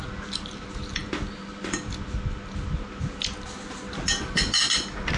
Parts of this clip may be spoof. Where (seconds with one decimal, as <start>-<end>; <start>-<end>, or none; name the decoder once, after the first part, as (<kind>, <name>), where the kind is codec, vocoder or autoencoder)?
none